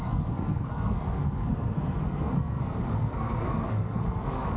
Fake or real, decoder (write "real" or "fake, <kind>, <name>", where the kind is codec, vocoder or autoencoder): fake, codec, SNAC